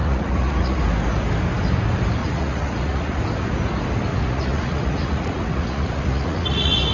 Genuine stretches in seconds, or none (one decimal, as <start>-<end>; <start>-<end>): 0.8-2.2; 3.2-4.1